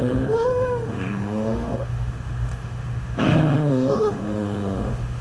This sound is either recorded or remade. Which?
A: remade